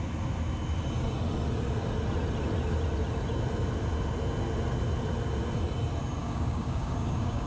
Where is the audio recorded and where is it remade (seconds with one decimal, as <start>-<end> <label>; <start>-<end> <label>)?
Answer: 0.0-6.2 recorded; 6.2-7.5 remade